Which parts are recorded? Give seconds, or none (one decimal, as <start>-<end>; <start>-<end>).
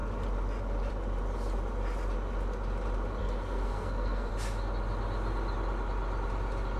0.0-3.2; 4.3-6.8